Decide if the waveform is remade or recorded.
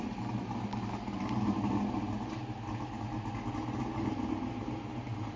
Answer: recorded